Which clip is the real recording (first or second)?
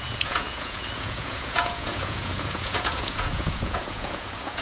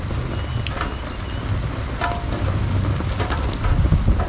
second